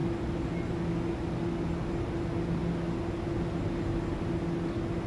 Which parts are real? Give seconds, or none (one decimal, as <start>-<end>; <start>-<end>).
0.0-5.1